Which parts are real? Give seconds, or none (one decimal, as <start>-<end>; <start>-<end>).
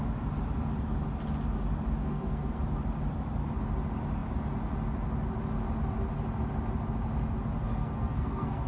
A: 0.0-2.0; 2.6-7.6